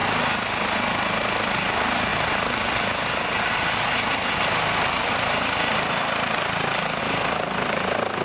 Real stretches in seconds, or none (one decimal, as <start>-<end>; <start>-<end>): 0.0-8.2